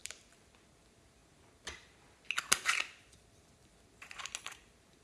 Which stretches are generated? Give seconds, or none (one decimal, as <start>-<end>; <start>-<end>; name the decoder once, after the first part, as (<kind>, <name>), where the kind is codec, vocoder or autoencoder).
none